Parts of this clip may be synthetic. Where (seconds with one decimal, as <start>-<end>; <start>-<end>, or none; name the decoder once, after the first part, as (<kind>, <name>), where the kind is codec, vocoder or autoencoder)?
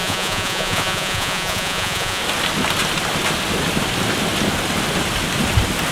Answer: 0.0-2.2 (vocoder, Vocos)